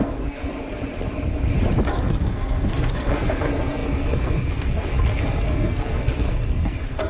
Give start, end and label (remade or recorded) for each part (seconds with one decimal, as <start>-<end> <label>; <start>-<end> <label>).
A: 0.0-0.5 remade; 0.5-2.0 recorded; 2.0-7.1 remade